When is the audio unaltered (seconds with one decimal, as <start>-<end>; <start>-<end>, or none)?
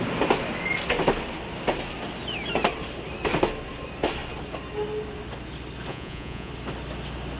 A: 0.0-5.9; 6.5-7.4